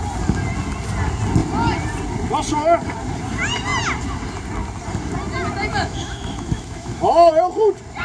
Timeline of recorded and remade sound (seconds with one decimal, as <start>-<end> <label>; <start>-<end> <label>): 0.0-5.7 recorded; 5.7-7.3 remade; 7.3-8.0 recorded